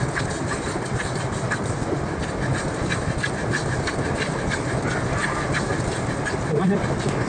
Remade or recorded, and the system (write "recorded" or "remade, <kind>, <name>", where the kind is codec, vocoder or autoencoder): recorded